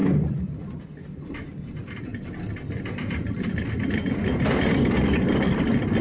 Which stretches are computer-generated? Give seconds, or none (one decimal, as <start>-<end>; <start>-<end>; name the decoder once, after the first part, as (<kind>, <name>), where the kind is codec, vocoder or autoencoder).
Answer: 0.0-0.8 (vocoder, BigVGAN v2); 2.1-6.0